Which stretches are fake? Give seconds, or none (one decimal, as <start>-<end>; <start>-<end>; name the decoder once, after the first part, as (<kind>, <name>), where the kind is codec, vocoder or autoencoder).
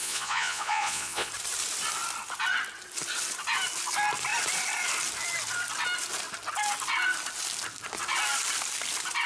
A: 0.0-1.3 (vocoder, Vocos)